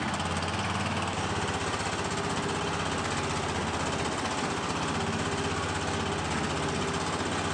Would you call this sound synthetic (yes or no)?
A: no